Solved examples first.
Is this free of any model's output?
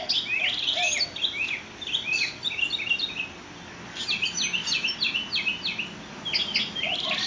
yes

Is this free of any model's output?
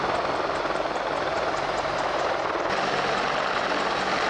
yes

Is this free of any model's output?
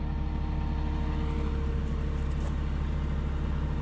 yes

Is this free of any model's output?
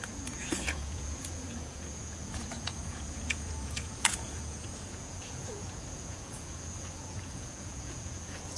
no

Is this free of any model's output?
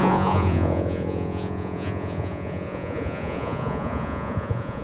no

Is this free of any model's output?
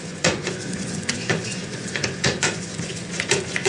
no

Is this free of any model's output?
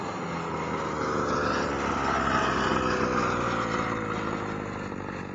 yes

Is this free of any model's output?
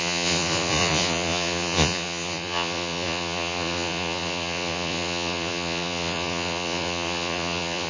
no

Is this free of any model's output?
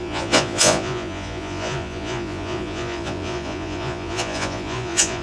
no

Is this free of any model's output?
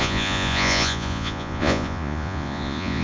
no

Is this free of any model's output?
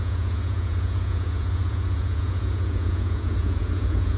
no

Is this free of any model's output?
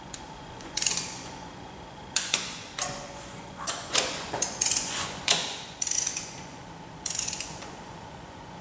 no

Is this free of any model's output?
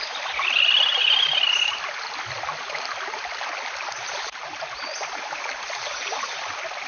yes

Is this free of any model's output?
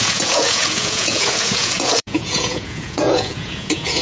no